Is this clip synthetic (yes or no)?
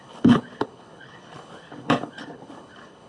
yes